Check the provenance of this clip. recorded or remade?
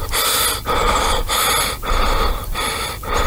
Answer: remade